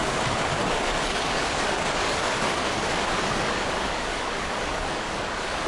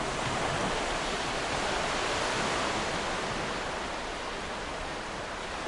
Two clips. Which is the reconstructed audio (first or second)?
first